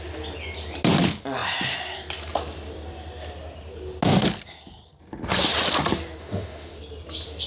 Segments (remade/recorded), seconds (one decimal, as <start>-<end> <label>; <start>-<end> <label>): 0.0-6.2 recorded; 6.2-6.8 remade; 6.8-7.5 recorded